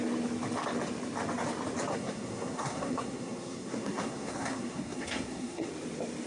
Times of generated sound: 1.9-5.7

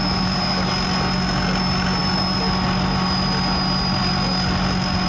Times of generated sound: 0.0-0.6

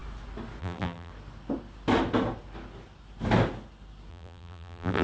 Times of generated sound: 0.6-1.1; 4.1-5.0

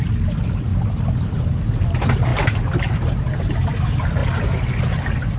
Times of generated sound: none

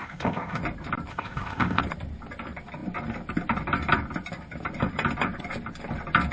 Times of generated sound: 0.0-0.6; 1.1-1.8

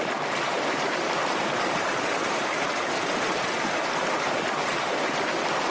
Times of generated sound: none

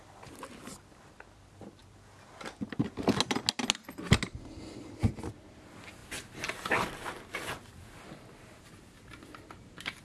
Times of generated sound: none

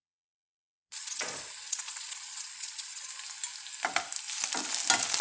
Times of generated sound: 0.0-3.1